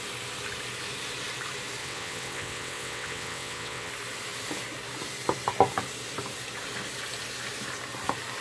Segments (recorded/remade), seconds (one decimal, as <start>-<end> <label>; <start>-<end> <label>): 0.0-1.8 recorded; 1.8-3.9 remade; 3.9-8.4 recorded

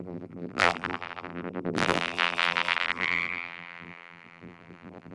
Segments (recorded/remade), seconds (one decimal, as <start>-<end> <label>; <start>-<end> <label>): 0.0-5.1 remade

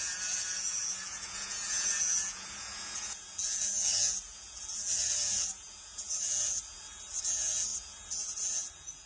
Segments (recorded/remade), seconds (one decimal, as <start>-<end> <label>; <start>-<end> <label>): 0.0-9.1 remade